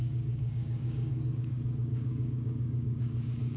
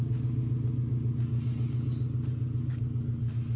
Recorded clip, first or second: second